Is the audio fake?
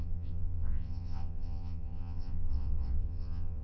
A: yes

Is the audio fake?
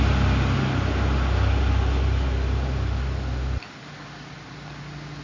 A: no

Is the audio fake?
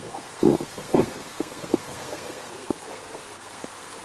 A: yes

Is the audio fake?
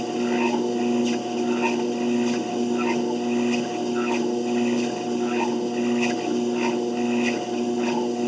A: no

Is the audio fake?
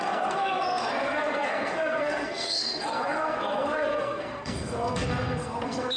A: yes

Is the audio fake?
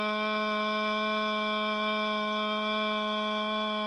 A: no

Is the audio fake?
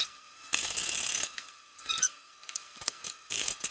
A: yes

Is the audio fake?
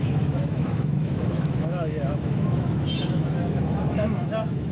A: yes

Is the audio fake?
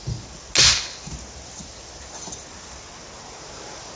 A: no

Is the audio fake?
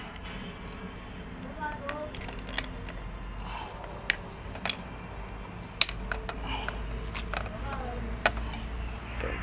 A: no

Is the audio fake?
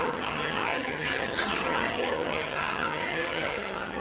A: yes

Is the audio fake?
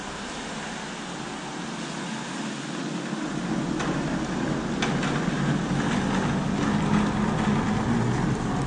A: no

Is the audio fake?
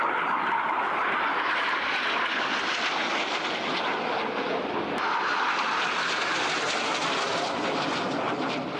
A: no